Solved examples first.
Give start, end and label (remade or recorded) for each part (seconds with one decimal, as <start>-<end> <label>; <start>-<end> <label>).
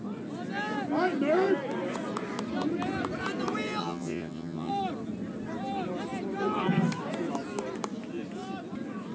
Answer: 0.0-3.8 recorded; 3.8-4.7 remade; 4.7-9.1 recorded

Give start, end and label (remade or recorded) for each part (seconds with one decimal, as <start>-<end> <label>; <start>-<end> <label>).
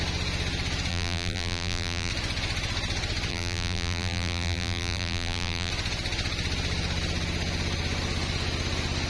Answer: 0.0-0.9 recorded; 0.9-2.1 remade; 2.1-3.3 recorded; 3.3-5.7 remade; 5.7-9.1 recorded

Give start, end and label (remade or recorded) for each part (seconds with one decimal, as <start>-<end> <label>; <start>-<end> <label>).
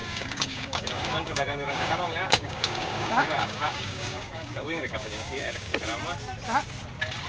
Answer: 0.0-5.7 remade; 5.7-7.3 recorded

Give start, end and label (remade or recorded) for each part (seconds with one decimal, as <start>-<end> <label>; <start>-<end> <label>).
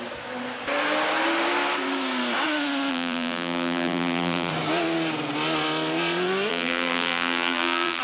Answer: 0.0-2.9 recorded; 2.9-4.5 remade; 4.5-6.5 recorded; 6.5-8.0 remade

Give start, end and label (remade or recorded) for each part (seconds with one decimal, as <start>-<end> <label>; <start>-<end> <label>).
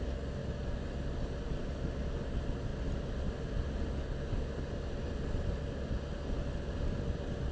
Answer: 0.0-7.5 recorded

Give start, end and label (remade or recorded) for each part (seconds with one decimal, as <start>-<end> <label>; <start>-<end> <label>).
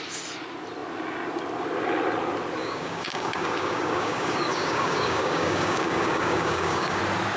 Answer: 0.0-2.6 recorded; 2.6-7.0 remade; 7.0-7.4 recorded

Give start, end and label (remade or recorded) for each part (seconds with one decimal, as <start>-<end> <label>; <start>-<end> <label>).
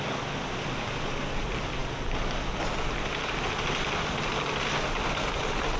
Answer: 0.0-5.8 recorded